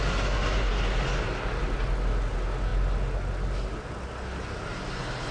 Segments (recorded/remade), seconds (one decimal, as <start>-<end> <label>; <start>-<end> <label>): 0.0-5.3 recorded